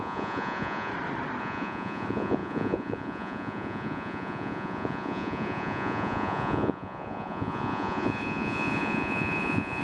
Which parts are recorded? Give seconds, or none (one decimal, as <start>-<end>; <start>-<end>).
0.9-1.4

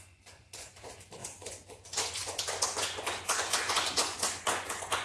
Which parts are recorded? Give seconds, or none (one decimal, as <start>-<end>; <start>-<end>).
none

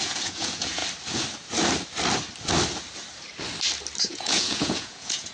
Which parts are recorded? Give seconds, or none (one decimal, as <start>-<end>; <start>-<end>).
0.8-4.0

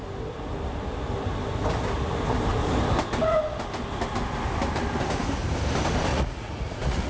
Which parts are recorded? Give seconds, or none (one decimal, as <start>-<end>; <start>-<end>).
0.0-6.1